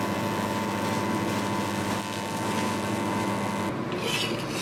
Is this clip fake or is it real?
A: real